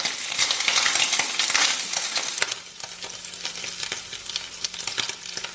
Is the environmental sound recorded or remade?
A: recorded